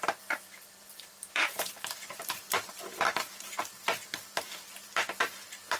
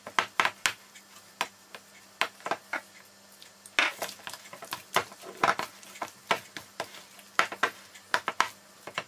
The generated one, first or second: first